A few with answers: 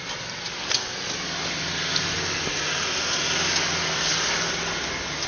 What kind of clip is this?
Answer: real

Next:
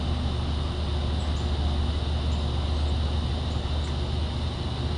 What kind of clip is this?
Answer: real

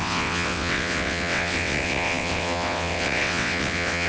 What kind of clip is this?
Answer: fake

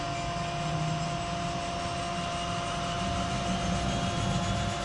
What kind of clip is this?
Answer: real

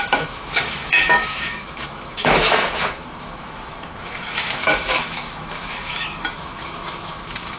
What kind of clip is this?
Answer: fake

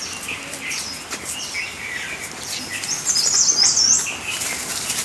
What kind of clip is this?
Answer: real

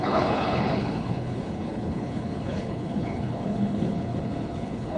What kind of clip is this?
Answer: fake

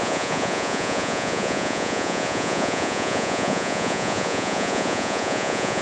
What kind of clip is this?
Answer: fake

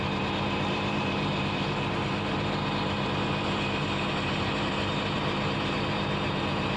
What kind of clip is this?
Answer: fake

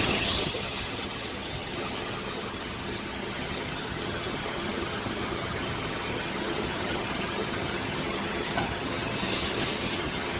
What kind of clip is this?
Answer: fake